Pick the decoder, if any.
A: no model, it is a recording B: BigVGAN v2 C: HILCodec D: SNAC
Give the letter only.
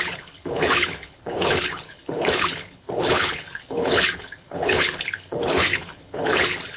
C